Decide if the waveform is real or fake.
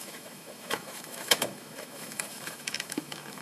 fake